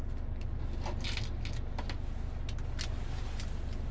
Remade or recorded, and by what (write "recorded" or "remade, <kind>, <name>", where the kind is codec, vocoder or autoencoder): recorded